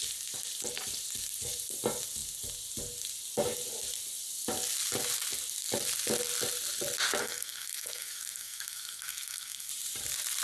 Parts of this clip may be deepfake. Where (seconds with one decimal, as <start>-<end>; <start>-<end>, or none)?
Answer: 7.2-9.7